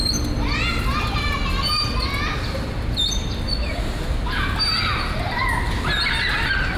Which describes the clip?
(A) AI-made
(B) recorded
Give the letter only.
B